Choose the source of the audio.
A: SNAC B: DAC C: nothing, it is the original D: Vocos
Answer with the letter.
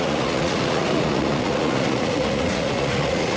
D